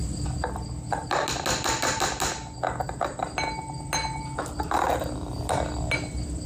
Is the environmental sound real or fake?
real